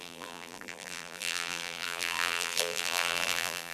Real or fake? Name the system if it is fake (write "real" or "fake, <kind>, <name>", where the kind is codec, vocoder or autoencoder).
fake, vocoder, BigVGAN v2